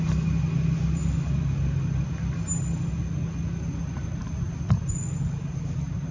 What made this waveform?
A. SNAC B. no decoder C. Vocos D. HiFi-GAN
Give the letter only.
B